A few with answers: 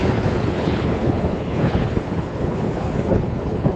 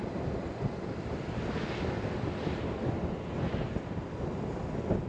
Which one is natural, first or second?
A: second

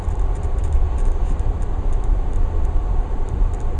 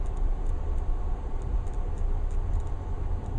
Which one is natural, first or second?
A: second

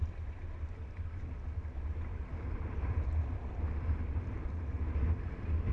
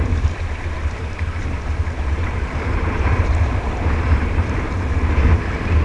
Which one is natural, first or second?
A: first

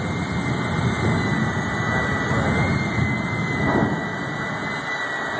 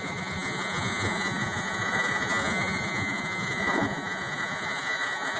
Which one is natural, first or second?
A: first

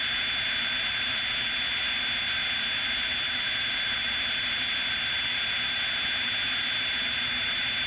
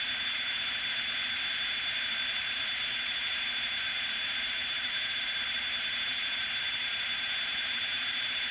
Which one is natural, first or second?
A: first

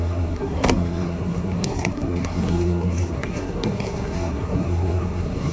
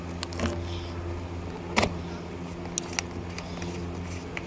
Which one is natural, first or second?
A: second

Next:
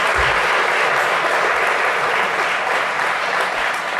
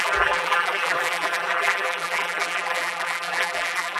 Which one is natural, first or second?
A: first